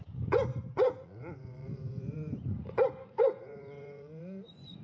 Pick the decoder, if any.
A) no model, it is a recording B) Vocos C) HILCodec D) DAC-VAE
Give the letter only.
B